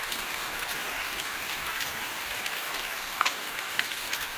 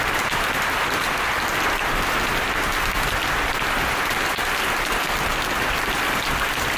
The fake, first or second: first